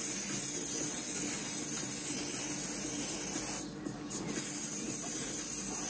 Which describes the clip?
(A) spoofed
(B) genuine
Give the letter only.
B